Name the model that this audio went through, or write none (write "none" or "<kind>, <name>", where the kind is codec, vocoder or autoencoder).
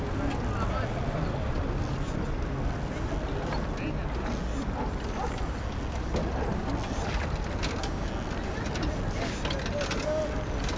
none